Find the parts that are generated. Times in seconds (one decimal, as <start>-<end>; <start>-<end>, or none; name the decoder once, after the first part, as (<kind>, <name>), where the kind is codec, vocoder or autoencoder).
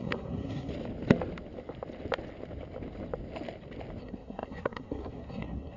0.0-0.7 (codec, SNAC); 4.0-5.8